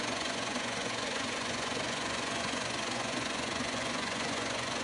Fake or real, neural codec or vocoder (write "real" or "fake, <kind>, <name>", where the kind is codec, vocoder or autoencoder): fake, vocoder, Vocos